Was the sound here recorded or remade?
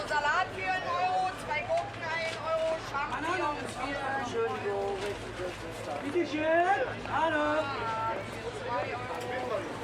recorded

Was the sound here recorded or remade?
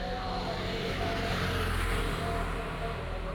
recorded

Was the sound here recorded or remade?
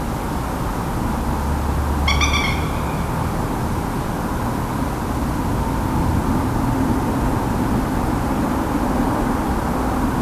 recorded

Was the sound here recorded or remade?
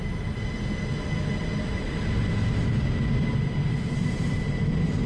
recorded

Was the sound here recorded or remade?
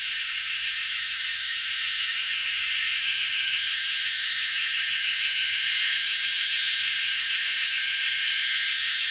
remade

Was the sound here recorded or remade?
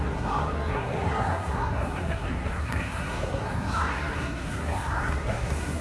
remade